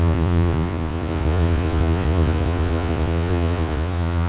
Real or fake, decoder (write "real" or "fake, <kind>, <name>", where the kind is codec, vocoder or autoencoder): fake, vocoder, Vocos